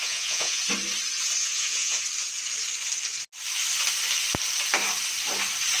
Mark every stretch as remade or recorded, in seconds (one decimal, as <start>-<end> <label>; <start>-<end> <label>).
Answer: 0.0-0.6 remade; 0.6-1.4 recorded; 1.4-2.0 remade; 2.0-5.8 recorded